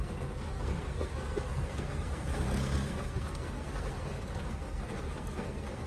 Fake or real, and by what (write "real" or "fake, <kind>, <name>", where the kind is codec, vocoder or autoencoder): fake, codec, SNAC